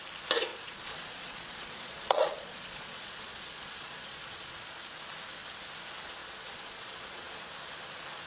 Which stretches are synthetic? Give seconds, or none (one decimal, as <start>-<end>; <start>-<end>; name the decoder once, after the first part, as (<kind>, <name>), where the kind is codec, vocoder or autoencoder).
0.5-4.5 (vocoder, Vocos); 6.2-7.5